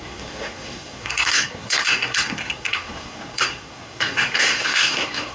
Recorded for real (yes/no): no